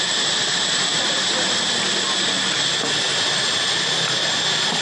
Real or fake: real